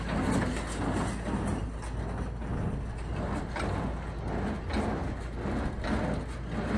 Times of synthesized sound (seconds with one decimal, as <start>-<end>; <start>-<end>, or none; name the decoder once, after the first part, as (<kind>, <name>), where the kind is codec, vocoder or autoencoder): none